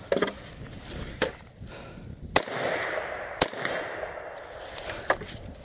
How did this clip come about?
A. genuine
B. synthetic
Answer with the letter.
A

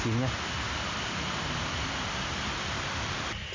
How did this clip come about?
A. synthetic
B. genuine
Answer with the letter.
B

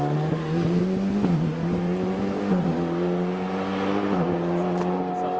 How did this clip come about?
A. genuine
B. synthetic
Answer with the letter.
A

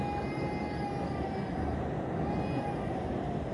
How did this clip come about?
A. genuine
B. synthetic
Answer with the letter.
A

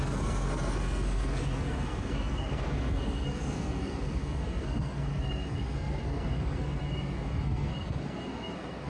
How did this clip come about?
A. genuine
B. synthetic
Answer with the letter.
B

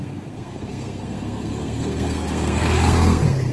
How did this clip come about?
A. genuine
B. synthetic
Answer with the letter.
B